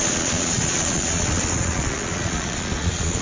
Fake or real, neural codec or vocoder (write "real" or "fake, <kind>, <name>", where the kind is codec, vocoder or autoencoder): fake, vocoder, Vocos